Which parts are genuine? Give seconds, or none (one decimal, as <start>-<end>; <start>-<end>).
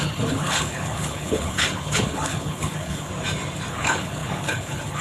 3.1-3.7